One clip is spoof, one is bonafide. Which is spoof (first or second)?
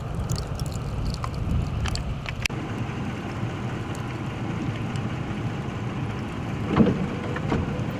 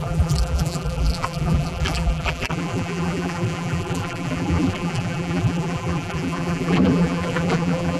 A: second